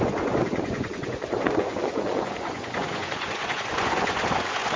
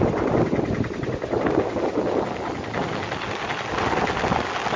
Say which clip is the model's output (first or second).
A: first